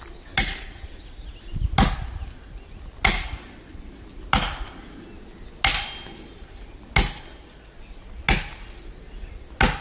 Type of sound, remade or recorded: recorded